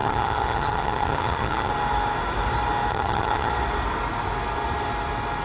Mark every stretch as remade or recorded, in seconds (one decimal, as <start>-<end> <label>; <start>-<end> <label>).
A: 0.0-1.7 remade; 1.7-2.9 recorded; 2.9-3.5 remade; 3.5-5.4 recorded